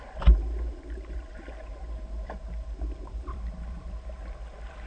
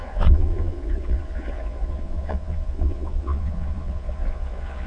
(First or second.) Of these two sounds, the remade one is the second